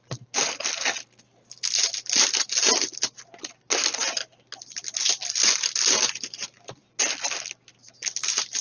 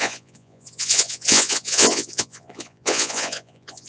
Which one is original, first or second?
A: first